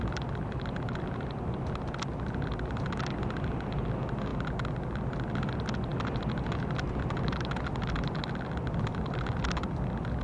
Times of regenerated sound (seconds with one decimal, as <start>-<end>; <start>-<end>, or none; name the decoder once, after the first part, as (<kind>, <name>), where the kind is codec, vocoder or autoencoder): none